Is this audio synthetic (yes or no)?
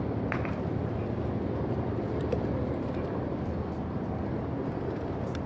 yes